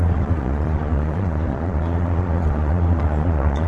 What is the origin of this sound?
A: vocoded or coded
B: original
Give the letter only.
A